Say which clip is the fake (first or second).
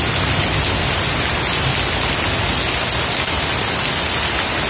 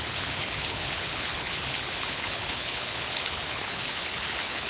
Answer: second